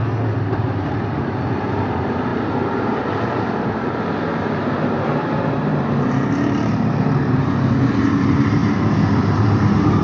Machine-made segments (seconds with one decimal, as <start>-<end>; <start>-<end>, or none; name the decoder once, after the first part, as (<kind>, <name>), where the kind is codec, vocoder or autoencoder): 0.0-7.4 (vocoder, BigVGAN v2); 8.0-8.6; 9.2-10.0